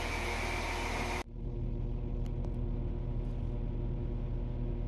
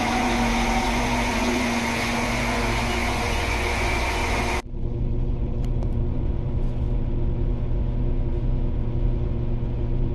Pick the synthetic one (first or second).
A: second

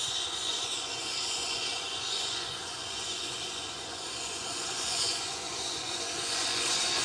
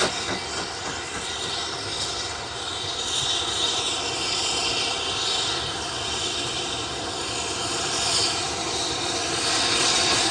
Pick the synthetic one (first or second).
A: first